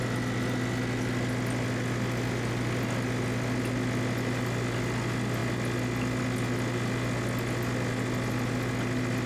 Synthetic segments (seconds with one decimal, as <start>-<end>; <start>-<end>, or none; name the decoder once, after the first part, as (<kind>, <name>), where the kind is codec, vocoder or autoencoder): none